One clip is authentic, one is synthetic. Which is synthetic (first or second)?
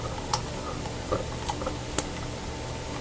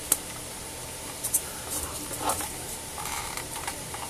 second